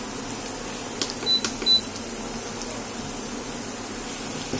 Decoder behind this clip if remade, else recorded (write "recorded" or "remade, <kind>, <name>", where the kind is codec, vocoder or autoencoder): recorded